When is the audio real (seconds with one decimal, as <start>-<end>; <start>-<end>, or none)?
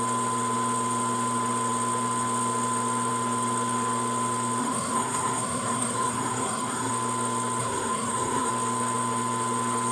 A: 0.0-4.6; 6.9-7.6; 8.5-9.9